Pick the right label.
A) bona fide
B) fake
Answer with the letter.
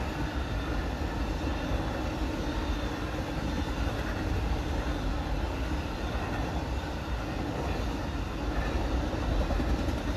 A